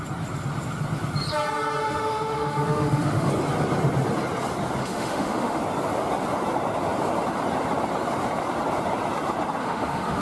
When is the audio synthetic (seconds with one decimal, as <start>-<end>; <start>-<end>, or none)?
1.8-3.3; 4.8-5.6; 9.6-10.2